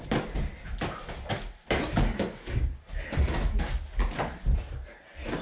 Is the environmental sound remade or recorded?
recorded